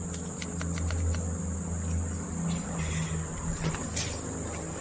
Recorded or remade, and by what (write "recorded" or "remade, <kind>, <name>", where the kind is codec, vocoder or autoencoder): recorded